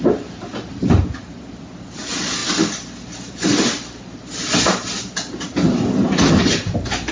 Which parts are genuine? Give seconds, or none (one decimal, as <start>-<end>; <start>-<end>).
0.0-7.1